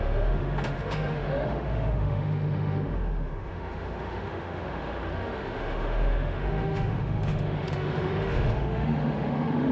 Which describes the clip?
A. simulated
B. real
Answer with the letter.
A